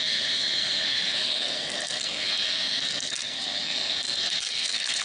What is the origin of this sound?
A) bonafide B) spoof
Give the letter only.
B